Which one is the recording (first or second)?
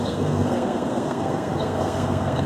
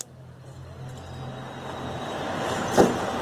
second